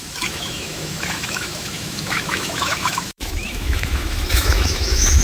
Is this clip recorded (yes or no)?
no